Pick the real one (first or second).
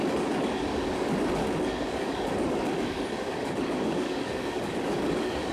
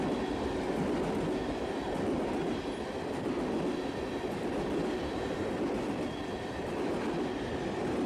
second